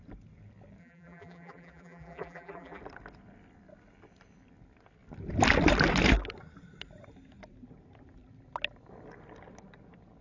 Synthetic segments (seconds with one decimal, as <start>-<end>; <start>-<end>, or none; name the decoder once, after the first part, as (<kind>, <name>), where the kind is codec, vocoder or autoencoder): 0.8-2.8 (vocoder, BigVGAN v2)

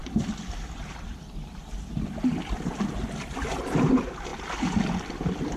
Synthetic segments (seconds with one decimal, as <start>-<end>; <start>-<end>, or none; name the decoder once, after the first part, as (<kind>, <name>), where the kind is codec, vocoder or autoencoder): none

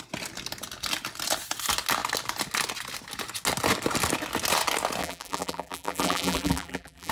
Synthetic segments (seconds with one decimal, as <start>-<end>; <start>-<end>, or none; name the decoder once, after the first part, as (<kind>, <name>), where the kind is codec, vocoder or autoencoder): 5.0-7.1 (vocoder, BigVGAN v2)

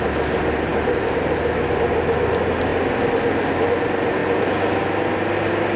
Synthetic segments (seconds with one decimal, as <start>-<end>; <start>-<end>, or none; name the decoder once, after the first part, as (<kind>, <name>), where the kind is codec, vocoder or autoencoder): 0.7-1.4 (vocoder, BigVGAN v2)

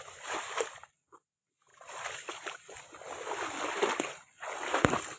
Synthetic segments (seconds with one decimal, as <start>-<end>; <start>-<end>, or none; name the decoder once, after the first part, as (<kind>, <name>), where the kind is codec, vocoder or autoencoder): none